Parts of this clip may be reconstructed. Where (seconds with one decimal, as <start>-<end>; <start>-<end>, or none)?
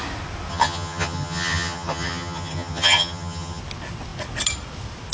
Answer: 0.5-3.6